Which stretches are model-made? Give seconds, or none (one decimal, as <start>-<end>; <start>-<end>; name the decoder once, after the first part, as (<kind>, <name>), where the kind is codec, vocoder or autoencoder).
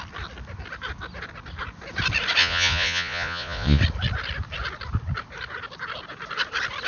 2.4-3.8 (vocoder, Vocos)